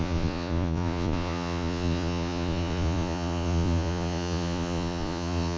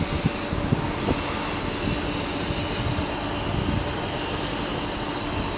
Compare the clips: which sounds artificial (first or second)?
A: first